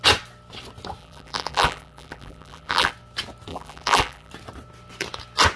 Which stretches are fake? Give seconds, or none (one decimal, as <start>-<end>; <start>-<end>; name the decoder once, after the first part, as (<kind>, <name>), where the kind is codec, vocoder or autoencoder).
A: 1.0-2.9 (vocoder, BigVGAN v2); 3.5-4.3